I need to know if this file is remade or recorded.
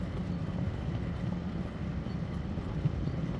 remade